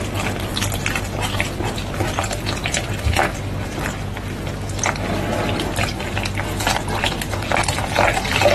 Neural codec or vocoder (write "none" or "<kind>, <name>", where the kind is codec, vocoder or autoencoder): none